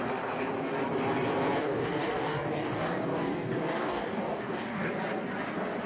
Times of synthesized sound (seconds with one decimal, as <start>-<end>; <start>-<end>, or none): 1.6-4.9